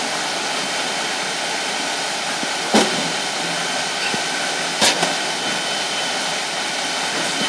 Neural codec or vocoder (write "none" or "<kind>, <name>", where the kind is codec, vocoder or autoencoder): none